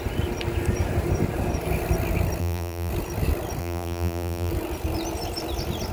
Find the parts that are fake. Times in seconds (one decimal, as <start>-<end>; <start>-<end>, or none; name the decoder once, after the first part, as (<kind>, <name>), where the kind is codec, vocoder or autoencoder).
2.4-2.9 (vocoder, BigVGAN v2); 3.6-4.5

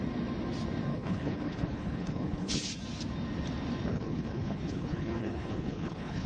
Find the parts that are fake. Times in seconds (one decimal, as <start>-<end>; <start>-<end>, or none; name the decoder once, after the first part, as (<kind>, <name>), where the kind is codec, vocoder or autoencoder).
0.9-2.7 (codec, HILCodec); 3.9-6.3

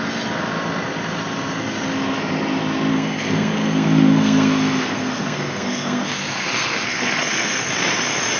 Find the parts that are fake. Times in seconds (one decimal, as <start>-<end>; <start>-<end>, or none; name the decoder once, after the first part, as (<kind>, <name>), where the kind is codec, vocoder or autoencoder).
2.9-7.7 (codec, SNAC)

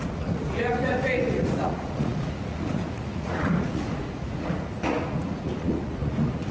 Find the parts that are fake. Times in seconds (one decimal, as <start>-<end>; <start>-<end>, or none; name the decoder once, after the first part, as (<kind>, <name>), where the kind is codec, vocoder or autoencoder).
0.0-6.5 (vocoder, Vocos)

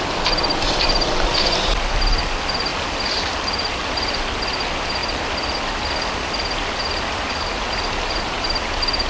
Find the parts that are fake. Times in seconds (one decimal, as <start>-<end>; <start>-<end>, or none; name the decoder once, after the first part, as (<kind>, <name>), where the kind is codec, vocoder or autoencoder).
none

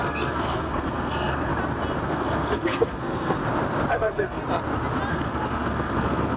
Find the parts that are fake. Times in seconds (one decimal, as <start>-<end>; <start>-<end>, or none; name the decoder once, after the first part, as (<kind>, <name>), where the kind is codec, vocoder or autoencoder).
0.0-1.5 (codec, SNAC); 2.0-3.4; 3.9-4.4; 5.1-6.4